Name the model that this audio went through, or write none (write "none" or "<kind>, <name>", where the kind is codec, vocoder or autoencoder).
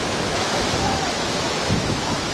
autoencoder, DAC-VAE